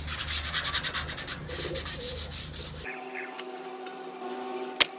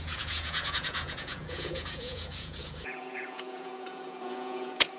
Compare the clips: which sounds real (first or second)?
first